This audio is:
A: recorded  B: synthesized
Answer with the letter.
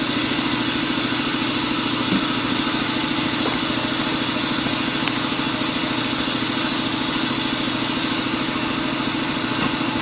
A